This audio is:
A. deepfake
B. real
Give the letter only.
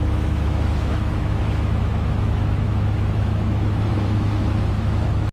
A